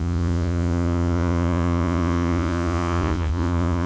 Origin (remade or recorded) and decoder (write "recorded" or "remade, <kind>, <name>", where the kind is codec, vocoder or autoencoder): remade, vocoder, Vocos